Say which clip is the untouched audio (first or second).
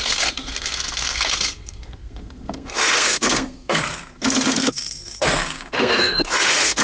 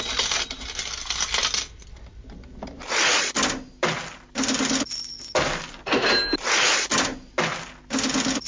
second